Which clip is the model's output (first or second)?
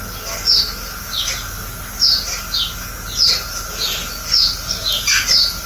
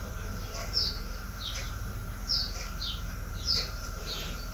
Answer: second